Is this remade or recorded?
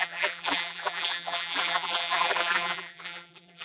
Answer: remade